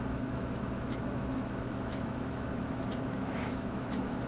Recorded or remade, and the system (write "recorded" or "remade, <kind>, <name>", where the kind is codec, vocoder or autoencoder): remade, autoencoder, DAC-VAE